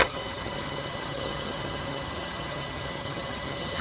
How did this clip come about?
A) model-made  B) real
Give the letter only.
A